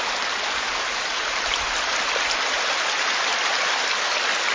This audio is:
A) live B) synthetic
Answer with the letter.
A